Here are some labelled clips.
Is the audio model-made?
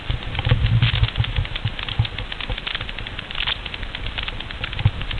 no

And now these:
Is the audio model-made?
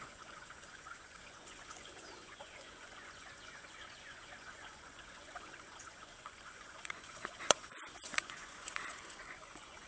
yes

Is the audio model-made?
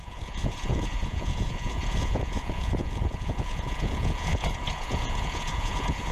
yes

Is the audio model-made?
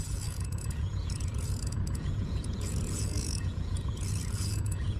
yes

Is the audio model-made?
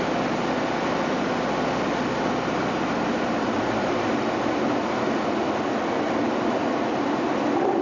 no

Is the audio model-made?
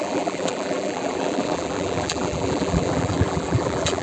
yes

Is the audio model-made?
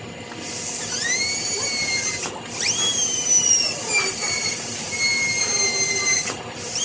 no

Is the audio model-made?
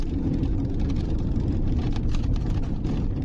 yes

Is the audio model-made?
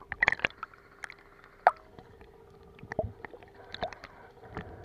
no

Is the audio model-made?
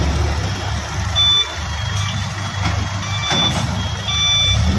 no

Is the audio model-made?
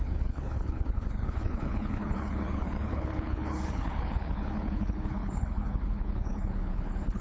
yes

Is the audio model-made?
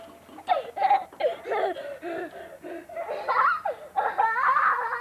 no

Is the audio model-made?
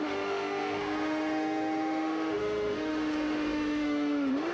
yes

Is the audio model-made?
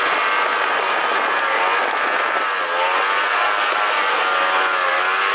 no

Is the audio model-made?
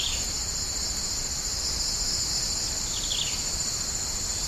no